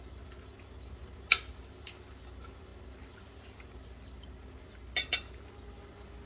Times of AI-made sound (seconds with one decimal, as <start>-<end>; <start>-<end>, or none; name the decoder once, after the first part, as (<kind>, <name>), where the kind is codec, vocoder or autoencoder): none